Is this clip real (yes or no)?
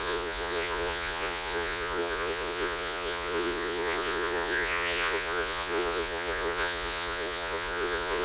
no